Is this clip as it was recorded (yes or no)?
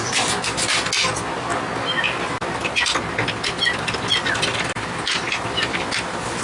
yes